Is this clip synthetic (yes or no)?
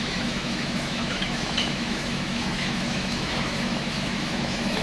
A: yes